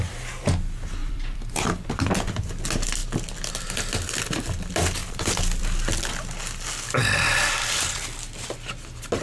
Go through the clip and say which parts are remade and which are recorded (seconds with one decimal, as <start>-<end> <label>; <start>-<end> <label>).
0.0-1.0 recorded; 1.0-2.5 remade; 2.5-5.0 recorded; 5.0-5.6 remade; 5.6-9.2 recorded